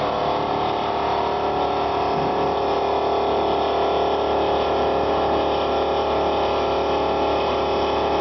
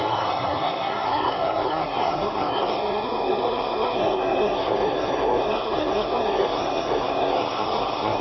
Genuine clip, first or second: first